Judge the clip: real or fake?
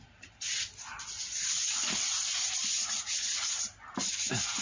real